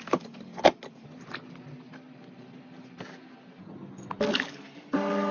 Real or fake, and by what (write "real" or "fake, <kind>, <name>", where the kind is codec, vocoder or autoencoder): real